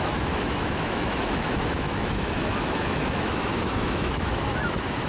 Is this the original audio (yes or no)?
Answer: no